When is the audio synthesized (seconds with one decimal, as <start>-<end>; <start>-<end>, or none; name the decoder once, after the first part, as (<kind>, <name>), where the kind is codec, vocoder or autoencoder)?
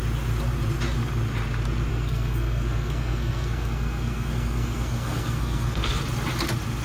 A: 1.9-6.0 (codec, SNAC)